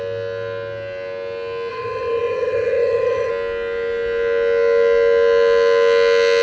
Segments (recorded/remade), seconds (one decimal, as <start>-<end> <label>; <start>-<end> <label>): 0.0-1.7 recorded; 1.7-3.3 remade; 3.3-6.4 recorded